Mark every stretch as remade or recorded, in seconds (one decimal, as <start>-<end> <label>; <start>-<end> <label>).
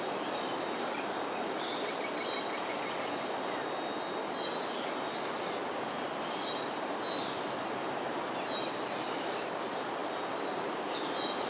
0.0-11.5 recorded